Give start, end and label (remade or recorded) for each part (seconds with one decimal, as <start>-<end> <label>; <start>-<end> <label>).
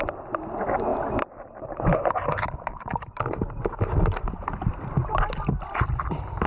0.0-6.5 recorded